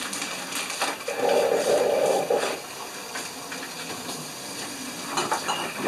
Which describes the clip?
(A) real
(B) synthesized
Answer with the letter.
A